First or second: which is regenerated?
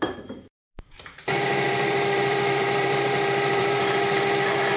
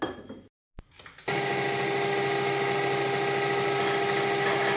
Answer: first